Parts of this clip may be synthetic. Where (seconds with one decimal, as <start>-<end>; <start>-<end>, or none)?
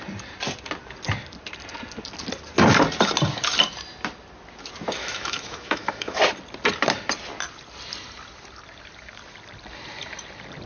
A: 5.0-6.2